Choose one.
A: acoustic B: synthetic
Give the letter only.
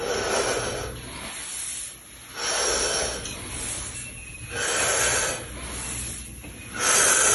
A